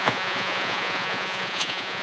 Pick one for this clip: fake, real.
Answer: fake